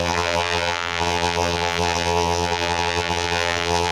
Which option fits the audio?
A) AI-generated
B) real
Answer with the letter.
A